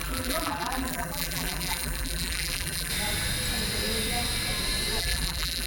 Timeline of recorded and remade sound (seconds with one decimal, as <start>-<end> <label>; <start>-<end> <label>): 0.0-2.9 remade; 2.9-5.0 recorded; 5.0-5.7 remade